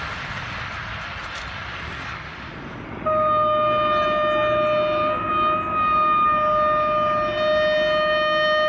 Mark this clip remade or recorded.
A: recorded